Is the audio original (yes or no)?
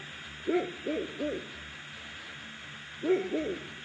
yes